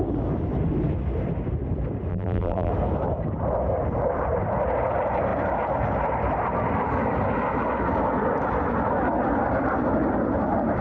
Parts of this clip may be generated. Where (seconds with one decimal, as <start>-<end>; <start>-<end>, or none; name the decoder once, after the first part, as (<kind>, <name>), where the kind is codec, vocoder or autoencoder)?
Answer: 2.1-2.7 (vocoder, BigVGAN v2)